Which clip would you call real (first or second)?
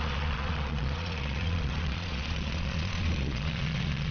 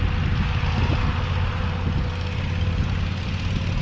second